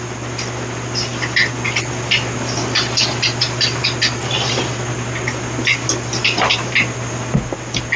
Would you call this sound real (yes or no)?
yes